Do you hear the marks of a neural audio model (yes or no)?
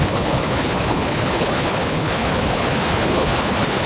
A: yes